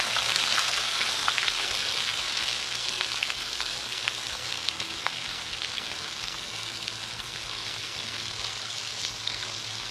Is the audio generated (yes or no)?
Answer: yes